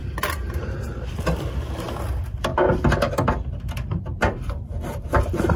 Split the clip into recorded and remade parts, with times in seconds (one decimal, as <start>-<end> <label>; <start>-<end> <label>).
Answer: 0.0-5.6 recorded